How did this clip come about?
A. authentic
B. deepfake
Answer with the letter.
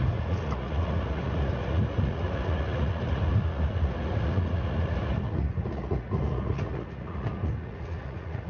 B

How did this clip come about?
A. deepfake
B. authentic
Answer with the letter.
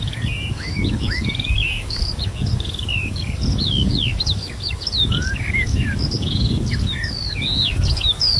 A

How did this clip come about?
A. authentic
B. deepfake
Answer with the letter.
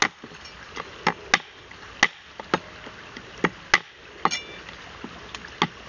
A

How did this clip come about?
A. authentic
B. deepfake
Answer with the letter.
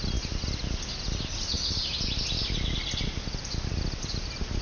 A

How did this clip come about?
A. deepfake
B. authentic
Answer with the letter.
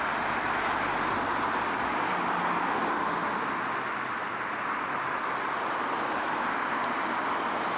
B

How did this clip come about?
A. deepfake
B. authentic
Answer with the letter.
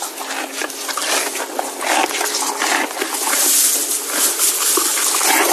B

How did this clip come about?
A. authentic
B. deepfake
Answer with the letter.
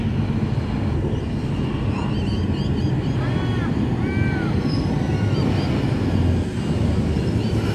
A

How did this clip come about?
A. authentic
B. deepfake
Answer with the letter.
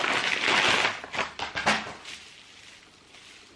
A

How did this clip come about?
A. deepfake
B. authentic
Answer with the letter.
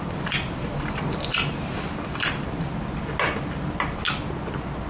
B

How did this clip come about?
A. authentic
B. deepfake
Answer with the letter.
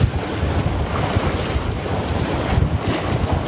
A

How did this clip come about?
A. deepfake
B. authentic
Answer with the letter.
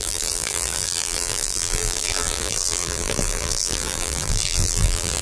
A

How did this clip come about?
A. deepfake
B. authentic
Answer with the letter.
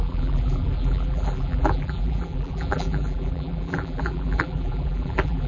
A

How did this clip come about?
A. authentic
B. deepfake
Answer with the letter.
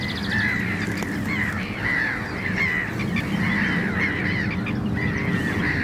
A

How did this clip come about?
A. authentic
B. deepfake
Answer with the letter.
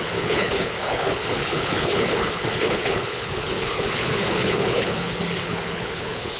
B